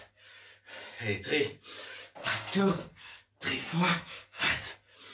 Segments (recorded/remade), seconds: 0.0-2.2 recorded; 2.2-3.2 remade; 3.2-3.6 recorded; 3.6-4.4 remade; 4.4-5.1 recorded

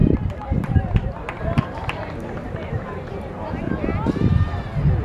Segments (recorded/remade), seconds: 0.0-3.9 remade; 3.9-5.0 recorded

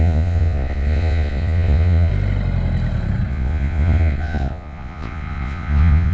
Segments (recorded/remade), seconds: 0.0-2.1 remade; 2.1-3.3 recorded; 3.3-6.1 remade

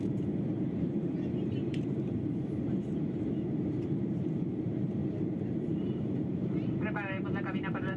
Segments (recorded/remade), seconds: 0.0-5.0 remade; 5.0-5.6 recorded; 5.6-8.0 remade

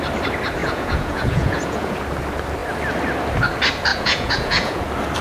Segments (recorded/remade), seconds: 0.0-0.6 recorded; 0.6-2.0 remade; 2.0-3.9 recorded; 3.9-4.8 remade; 4.8-5.2 recorded

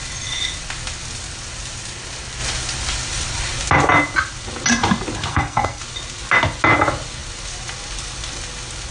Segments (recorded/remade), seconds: 0.0-5.3 recorded; 5.3-5.8 remade; 5.8-8.9 recorded

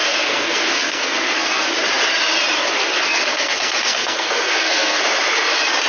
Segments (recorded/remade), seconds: 0.0-1.6 remade; 1.6-2.8 recorded; 2.8-5.0 remade; 5.0-5.9 recorded